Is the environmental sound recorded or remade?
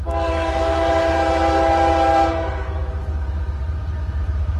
remade